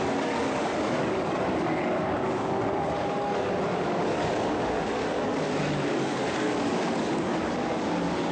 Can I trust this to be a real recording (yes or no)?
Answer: no